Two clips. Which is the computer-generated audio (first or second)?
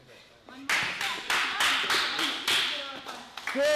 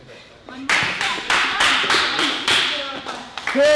second